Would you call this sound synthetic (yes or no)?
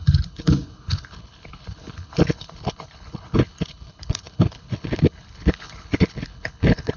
yes